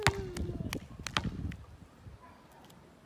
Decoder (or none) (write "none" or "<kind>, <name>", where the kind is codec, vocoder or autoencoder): none